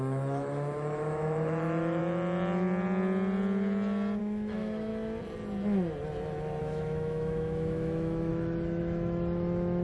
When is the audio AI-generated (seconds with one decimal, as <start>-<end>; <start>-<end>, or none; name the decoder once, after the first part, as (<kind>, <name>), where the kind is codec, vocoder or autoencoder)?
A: 0.0-2.0 (autoencoder, DAC-VAE); 4.2-4.9; 6.6-9.8